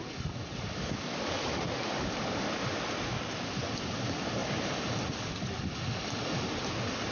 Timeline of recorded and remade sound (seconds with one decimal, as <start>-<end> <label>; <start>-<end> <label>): 0.0-7.1 recorded